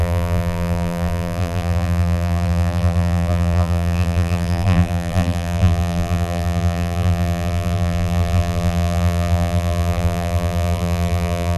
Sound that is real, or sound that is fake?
fake